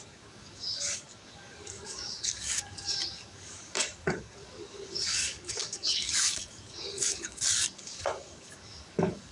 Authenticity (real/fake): fake